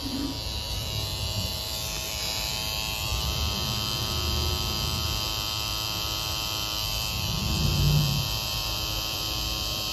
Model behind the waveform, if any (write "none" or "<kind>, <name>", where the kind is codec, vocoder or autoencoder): vocoder, BigVGAN v2